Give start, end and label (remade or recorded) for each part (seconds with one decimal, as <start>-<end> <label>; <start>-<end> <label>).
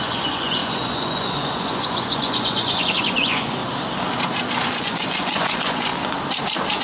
0.0-3.6 remade; 3.6-4.8 recorded; 4.8-5.9 remade; 5.9-6.8 recorded